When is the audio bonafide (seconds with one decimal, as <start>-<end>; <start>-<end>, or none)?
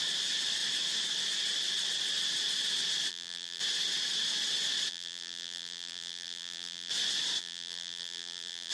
0.0-3.1; 3.6-4.9; 6.9-7.4